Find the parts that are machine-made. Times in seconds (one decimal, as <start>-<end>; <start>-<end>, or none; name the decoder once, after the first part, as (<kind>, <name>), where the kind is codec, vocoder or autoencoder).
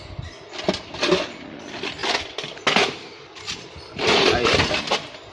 none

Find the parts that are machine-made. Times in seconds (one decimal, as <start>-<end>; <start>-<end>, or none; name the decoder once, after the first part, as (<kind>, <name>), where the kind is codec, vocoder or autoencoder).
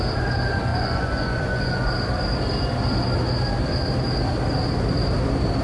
0.7-1.9 (vocoder, Vocos)